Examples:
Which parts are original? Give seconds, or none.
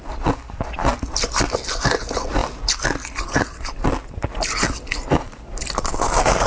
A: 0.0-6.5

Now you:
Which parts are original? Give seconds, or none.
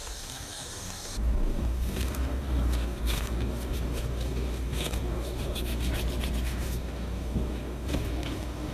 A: 5.9-6.4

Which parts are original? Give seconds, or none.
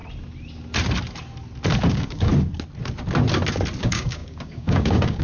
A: 0.0-1.9; 2.3-3.8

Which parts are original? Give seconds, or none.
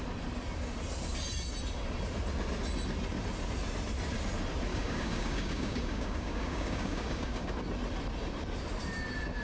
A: 0.0-4.7; 7.5-9.4